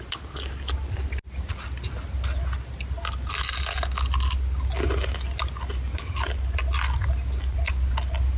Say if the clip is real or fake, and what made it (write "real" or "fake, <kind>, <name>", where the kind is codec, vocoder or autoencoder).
real